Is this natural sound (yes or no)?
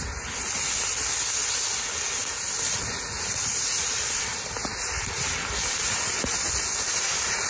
yes